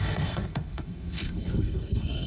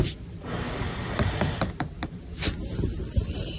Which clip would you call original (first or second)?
second